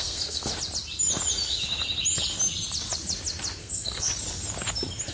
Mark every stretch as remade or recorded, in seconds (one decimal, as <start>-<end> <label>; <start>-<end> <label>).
0.0-0.5 remade; 0.5-3.6 recorded; 3.6-4.1 remade; 4.1-5.1 recorded